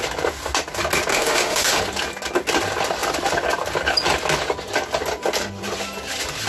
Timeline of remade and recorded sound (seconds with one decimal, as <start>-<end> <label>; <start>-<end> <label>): 0.0-1.1 recorded; 1.1-1.8 remade; 1.8-6.5 recorded